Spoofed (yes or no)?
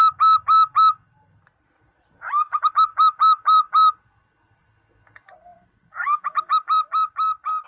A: no